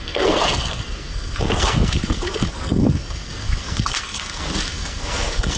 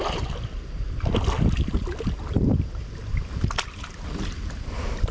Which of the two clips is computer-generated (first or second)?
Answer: first